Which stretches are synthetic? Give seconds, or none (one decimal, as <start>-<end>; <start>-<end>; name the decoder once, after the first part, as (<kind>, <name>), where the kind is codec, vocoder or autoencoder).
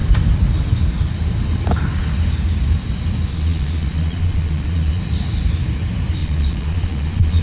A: 3.3-5.0 (vocoder, Vocos); 6.2-7.4